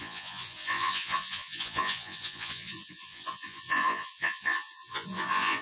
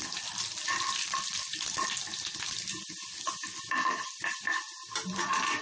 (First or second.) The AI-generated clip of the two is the first